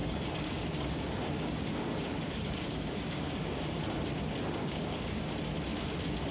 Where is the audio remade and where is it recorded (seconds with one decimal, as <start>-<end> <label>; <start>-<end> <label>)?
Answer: 0.0-3.8 remade; 3.8-4.6 recorded; 4.6-5.3 remade; 5.3-6.3 recorded